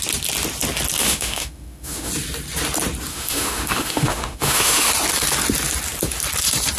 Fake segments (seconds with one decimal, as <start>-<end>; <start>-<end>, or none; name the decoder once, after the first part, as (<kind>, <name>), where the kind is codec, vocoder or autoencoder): 1.0-2.1 (autoencoder, DAC-VAE); 3.1-4.9